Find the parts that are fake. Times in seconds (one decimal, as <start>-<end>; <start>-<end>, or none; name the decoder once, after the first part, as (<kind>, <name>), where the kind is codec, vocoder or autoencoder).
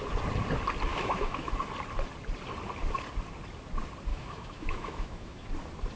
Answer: 0.9-1.5 (autoencoder, DAC-VAE); 4.1-5.5